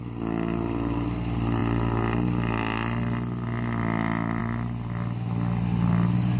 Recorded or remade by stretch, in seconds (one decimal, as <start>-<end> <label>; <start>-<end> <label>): 0.0-6.4 recorded